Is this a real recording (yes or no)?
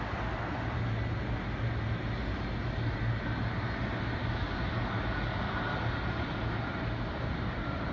yes